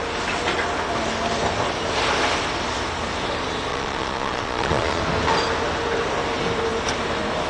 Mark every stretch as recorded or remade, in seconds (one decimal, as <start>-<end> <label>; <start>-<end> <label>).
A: 0.0-3.7 recorded; 3.7-5.0 remade; 5.0-7.5 recorded